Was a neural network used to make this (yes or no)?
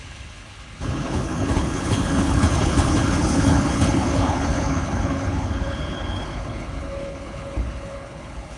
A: yes